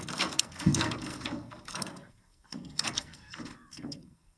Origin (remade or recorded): remade